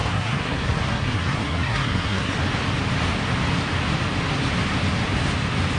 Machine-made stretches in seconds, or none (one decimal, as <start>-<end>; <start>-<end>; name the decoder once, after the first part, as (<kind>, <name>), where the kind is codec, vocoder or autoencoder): 0.0-2.3 (codec, SNAC)